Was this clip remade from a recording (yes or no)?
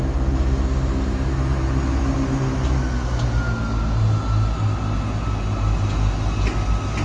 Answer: no